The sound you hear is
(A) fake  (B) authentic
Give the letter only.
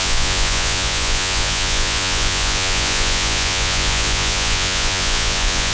A